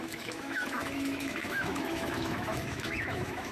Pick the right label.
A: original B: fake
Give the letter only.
B